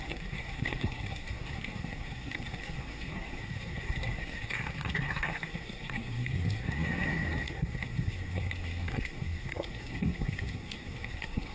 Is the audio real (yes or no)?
no